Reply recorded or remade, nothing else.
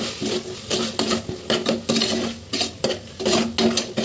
recorded